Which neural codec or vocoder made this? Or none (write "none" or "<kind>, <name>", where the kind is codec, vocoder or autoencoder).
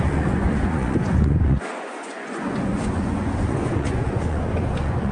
vocoder, Vocos